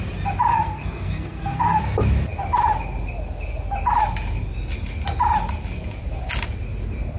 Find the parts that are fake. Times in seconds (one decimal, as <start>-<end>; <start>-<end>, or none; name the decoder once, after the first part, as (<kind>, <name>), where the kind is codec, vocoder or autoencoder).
0.5-1.8 (codec, SNAC)